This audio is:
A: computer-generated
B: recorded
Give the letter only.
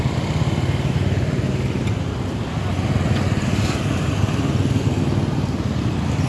B